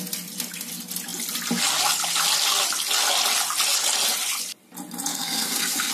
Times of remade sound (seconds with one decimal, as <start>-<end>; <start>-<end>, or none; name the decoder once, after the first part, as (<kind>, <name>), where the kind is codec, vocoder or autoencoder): 5.1-5.9 (codec, SNAC)